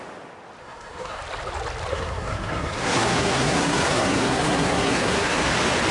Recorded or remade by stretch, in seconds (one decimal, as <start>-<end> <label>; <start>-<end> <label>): 0.0-0.6 recorded; 0.6-1.2 remade; 1.2-1.9 recorded; 1.9-5.4 remade; 5.4-5.9 recorded